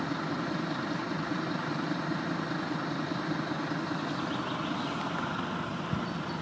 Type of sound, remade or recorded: recorded